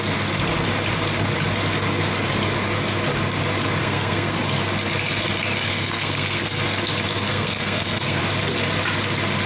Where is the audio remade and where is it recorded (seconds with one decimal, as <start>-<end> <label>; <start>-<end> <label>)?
0.0-3.8 recorded; 3.8-4.4 remade; 4.4-5.7 recorded; 5.7-6.6 remade; 6.6-7.3 recorded; 7.3-8.2 remade; 8.2-9.5 recorded